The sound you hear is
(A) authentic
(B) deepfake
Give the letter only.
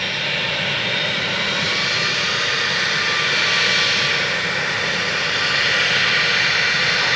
A